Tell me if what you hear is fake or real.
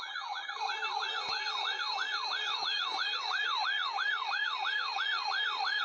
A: fake